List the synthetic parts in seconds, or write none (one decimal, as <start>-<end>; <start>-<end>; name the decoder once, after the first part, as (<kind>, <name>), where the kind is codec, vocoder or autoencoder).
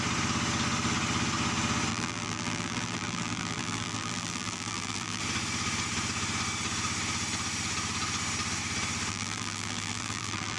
1.9-5.2 (vocoder, BigVGAN v2); 9.1-10.6